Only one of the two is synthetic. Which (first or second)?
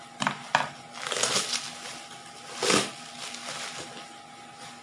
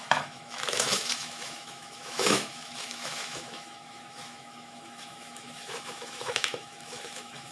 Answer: second